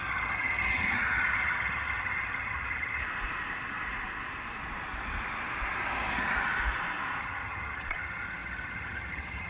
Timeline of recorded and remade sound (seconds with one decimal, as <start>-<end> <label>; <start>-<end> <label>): 0.0-3.0 remade; 3.0-7.2 recorded; 7.2-9.5 remade